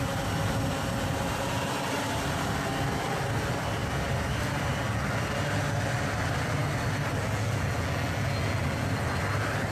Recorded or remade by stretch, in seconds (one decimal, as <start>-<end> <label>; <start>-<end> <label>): 0.0-3.8 recorded; 3.8-4.7 remade; 4.7-9.7 recorded